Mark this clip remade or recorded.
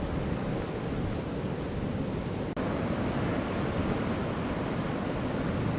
recorded